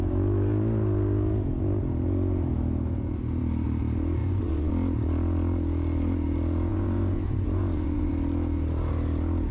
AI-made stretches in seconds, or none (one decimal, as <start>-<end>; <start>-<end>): 4.2-4.7; 6.7-8.1

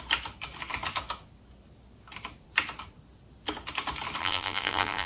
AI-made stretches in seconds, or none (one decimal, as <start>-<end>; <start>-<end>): 4.2-5.1

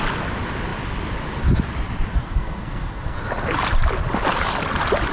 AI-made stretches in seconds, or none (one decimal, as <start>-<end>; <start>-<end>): 2.2-3.2